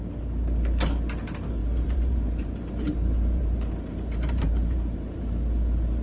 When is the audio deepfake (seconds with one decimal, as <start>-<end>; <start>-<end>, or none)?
1.6-5.2